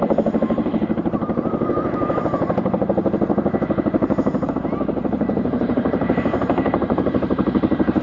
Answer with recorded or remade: remade